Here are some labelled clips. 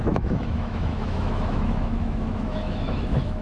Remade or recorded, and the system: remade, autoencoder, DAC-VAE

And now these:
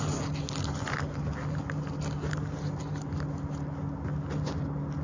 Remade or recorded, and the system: recorded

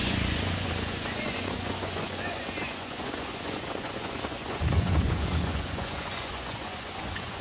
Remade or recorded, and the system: remade, vocoder, Vocos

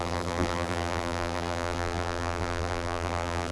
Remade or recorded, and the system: remade, vocoder, BigVGAN v2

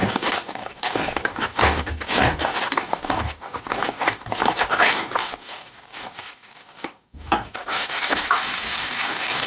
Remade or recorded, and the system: remade, codec, DAC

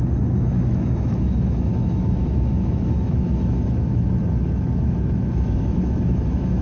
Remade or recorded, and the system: remade, autoencoder, DAC-VAE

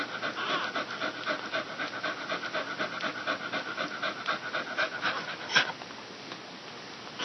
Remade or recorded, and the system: recorded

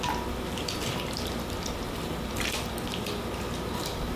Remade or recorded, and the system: recorded